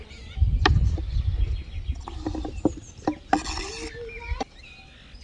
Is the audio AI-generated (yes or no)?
no